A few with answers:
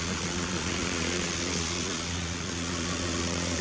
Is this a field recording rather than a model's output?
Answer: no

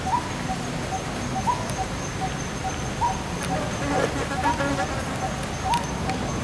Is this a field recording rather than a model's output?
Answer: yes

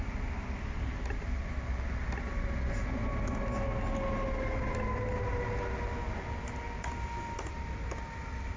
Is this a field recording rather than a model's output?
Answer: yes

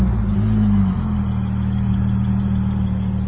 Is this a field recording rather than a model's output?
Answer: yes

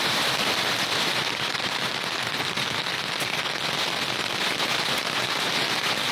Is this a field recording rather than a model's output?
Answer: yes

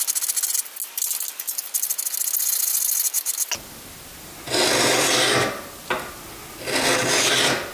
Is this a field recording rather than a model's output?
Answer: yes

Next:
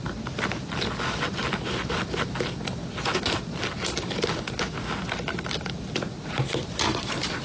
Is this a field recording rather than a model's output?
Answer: yes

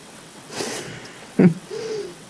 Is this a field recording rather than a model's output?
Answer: no